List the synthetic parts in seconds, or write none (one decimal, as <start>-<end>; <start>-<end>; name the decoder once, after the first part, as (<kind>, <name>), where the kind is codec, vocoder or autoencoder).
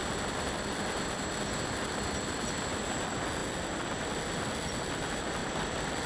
none